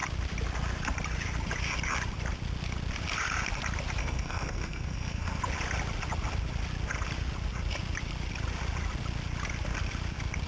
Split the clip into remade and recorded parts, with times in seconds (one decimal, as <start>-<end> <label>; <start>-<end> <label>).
0.0-4.0 recorded; 4.0-5.4 remade; 5.4-10.5 recorded